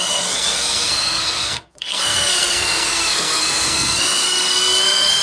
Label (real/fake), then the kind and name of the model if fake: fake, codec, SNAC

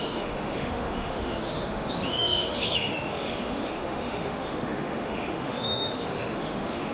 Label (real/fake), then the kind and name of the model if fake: fake, autoencoder, DAC-VAE